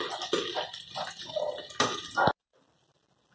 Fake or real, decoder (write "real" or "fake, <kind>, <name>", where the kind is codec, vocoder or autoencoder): real